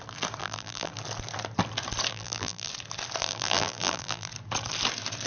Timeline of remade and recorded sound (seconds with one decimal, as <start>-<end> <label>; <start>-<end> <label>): 0.0-0.4 recorded; 0.4-0.9 remade; 0.9-2.1 recorded; 2.1-2.7 remade; 2.7-3.2 recorded; 3.2-4.3 remade; 4.3-5.3 recorded